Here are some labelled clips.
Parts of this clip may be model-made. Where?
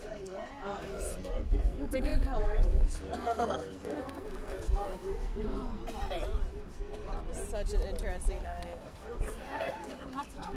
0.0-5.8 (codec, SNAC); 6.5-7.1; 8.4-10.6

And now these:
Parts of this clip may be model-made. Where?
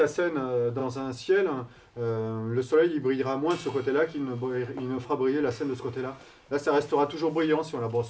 none